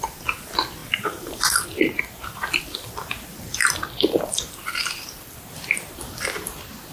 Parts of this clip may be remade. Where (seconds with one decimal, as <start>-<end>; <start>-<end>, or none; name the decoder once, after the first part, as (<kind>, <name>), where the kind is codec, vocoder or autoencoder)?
0.8-2.6 (vocoder, BigVGAN v2)